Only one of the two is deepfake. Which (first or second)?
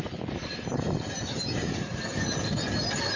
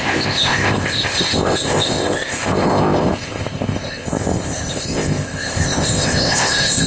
second